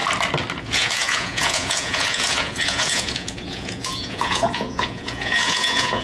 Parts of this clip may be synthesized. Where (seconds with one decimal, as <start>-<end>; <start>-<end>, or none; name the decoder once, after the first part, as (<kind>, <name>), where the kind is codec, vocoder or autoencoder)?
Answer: 0.6-6.0 (vocoder, Vocos)